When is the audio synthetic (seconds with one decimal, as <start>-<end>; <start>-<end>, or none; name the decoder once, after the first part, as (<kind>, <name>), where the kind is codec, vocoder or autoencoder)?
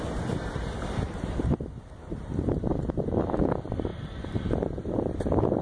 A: 0.0-5.6 (vocoder, BigVGAN v2)